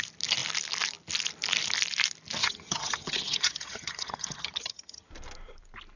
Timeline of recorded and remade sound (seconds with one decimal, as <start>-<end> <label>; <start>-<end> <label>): 0.0-2.4 recorded; 2.4-5.1 remade; 5.1-6.0 recorded